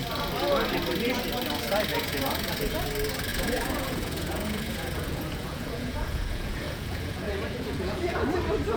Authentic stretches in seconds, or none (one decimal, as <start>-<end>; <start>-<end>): 0.0-1.9; 2.8-3.3; 8.3-8.8